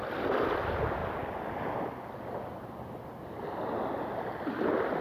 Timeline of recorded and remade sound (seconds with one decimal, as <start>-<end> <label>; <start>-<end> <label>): 0.0-5.0 recorded